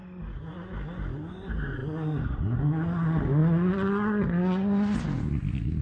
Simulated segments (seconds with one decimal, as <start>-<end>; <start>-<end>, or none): none